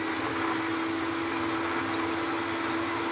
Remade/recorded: recorded